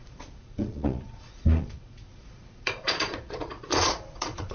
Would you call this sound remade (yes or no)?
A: yes